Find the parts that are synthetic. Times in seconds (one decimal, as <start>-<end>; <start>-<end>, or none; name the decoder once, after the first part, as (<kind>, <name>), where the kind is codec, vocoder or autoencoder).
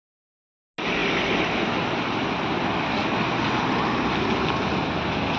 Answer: none